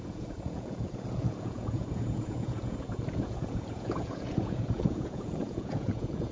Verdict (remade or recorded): remade